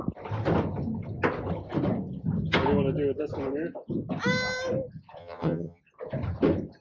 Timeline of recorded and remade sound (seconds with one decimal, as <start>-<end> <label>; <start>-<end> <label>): 0.0-5.2 recorded; 5.2-5.8 remade; 5.8-6.8 recorded